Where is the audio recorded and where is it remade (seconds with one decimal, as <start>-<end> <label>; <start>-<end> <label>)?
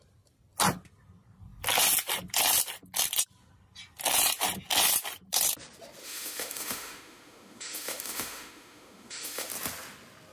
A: 0.0-6.0 recorded; 6.0-9.5 remade; 9.5-10.3 recorded